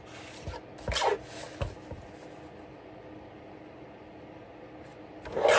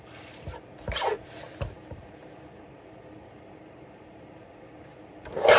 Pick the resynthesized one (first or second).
second